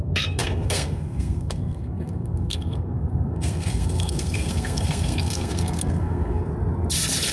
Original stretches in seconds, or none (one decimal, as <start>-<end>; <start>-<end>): 6.5-7.3